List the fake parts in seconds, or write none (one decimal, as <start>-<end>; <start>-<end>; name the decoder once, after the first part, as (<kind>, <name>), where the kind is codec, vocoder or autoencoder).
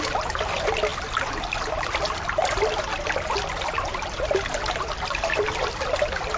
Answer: none